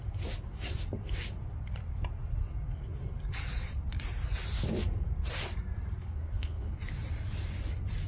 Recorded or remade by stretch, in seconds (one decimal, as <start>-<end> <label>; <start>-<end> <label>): 0.0-6.0 recorded; 6.0-6.8 remade; 6.8-8.1 recorded